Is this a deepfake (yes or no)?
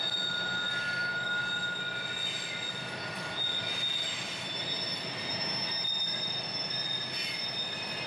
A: no